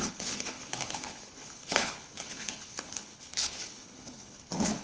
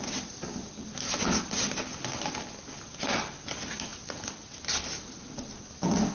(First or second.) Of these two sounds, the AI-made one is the first